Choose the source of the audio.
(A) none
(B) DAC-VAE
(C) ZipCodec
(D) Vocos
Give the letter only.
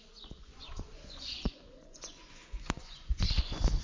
D